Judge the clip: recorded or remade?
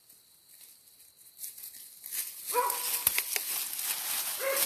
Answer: recorded